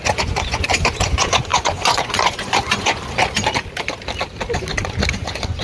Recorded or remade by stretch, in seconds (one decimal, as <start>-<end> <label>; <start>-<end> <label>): 0.0-3.0 remade; 3.0-5.1 recorded; 5.1-5.6 remade